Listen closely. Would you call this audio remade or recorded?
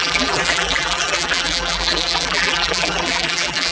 remade